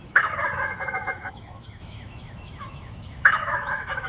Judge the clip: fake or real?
fake